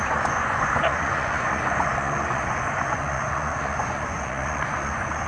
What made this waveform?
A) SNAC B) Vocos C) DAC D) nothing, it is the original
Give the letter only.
B